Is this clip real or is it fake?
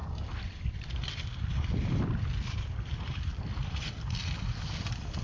real